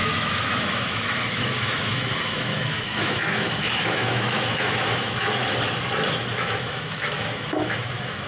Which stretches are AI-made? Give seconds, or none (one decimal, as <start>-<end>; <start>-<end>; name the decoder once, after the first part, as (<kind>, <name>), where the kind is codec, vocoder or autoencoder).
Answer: 0.0-5.4 (autoencoder, DAC-VAE); 6.1-8.3